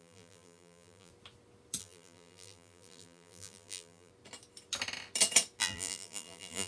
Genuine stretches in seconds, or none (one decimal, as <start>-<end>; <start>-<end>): 1.1-1.8; 4.1-5.6

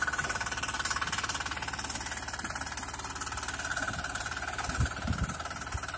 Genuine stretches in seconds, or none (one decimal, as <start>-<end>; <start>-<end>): 0.0-3.7

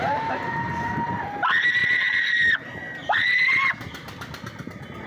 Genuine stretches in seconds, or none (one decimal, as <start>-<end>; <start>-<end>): 0.0-5.1

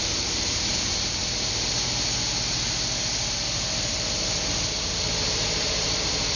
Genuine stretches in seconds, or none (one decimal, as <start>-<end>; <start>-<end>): 1.2-5.0

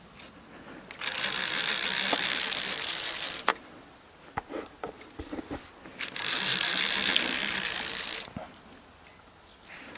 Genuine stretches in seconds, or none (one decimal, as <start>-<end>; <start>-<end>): 0.0-3.5; 5.6-7.4; 8.0-10.0

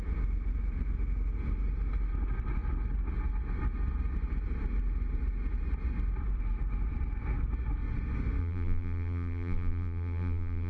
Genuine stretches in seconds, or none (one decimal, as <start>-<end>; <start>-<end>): 0.0-8.4